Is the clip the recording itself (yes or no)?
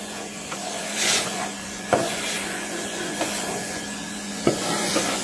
no